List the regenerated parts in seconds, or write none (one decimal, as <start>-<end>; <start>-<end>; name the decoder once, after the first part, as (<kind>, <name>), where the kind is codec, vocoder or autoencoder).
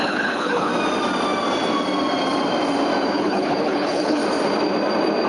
0.0-0.7 (codec, HILCodec); 3.1-4.2